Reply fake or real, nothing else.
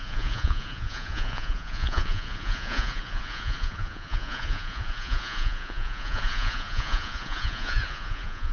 fake